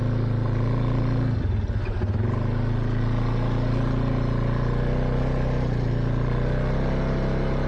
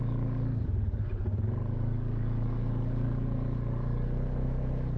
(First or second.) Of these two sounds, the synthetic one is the second